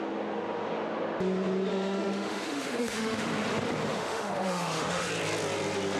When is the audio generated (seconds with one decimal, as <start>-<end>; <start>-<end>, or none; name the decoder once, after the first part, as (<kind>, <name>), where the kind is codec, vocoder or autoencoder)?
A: 1.7-3.3 (autoencoder, DAC-VAE); 3.9-5.1